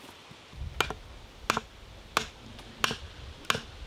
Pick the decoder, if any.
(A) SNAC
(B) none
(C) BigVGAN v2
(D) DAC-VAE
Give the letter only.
B